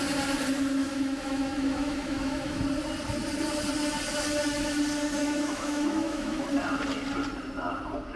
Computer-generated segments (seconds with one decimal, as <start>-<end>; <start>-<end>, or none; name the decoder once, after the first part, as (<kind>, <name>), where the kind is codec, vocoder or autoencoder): 0.8-2.6 (autoencoder, DAC-VAE); 5.2-6.5